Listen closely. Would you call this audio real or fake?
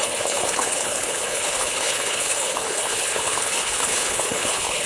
fake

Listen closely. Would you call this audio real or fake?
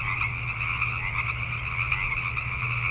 real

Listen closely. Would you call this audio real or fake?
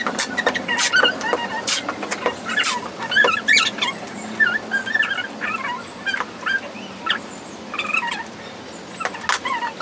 real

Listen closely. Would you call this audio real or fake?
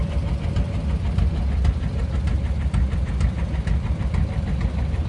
real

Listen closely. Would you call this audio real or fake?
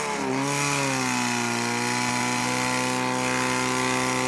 real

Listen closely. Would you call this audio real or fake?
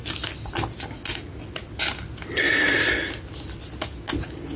real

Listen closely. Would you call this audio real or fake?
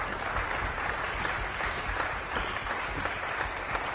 real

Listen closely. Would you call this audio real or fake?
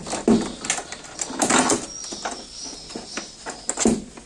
real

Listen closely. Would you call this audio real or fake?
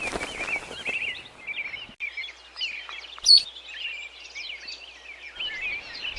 real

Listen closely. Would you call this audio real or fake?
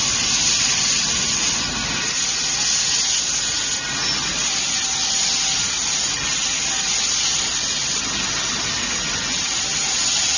real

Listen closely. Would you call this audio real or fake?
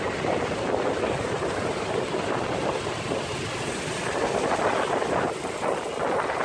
real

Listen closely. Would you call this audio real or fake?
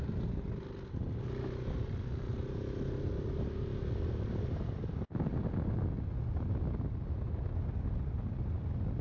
real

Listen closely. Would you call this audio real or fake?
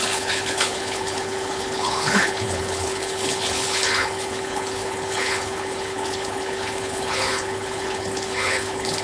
fake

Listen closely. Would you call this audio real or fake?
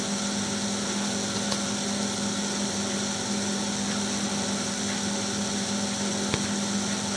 real